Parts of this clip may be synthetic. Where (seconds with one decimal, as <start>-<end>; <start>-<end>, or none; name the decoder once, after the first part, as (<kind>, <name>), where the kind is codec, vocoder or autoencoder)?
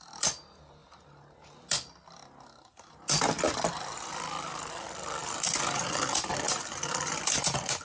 none